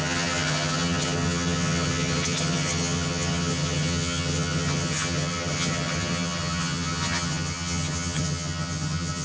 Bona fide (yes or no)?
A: no